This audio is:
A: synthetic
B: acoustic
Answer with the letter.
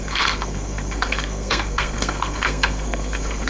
A